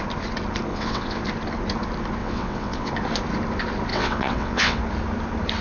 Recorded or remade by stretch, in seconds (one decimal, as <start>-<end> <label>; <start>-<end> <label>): 0.0-0.7 recorded; 0.7-1.2 remade; 1.2-2.2 recorded; 2.2-2.9 remade; 2.9-3.9 recorded; 3.9-4.8 remade; 4.8-5.6 recorded